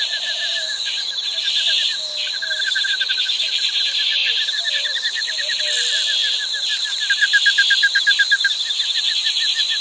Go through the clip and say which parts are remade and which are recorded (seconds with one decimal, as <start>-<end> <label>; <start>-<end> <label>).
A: 0.0-9.8 recorded